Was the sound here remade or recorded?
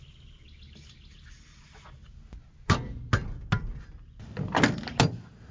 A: recorded